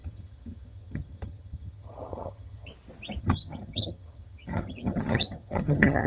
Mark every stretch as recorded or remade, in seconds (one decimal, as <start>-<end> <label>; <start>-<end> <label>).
0.0-2.7 remade; 2.7-3.2 recorded; 3.2-6.1 remade